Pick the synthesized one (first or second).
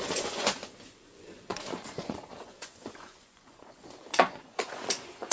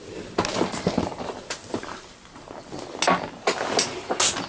first